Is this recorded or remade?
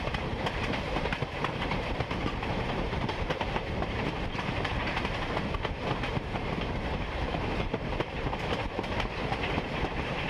remade